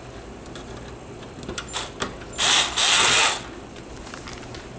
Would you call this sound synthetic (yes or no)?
no